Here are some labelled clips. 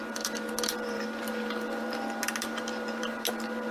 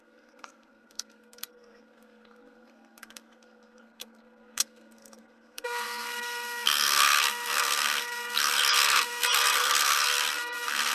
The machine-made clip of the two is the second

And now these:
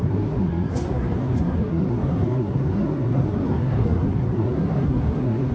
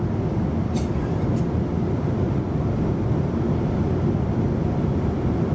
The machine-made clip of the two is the first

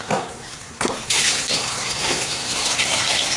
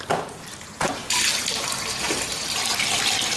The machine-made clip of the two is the first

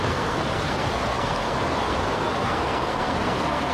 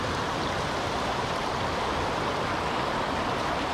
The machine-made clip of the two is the first